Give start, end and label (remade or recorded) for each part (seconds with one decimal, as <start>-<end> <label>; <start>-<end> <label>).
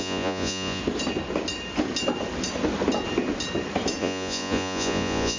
0.0-0.8 remade; 0.8-4.0 recorded; 4.0-5.4 remade